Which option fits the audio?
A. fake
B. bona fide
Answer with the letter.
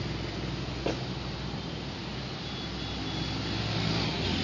B